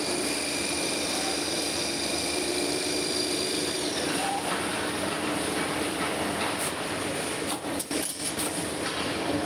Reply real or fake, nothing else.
fake